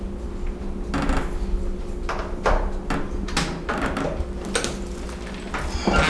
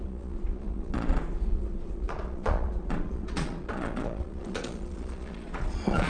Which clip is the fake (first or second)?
second